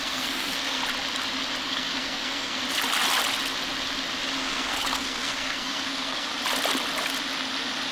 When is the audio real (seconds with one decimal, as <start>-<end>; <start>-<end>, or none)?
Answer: 0.8-1.6; 2.6-4.4; 6.3-7.9

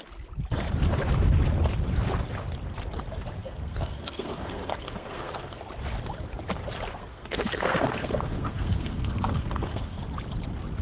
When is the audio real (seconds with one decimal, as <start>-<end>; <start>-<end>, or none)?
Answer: 0.0-3.4; 5.6-6.9; 10.0-10.8

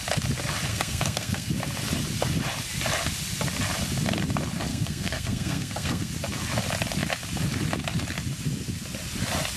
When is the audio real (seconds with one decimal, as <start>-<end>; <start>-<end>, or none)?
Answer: 0.0-0.7; 1.5-4.7; 6.1-9.6

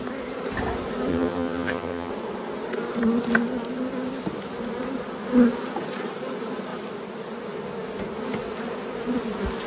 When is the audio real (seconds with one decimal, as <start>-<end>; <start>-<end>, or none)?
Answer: 0.0-1.1; 2.1-9.7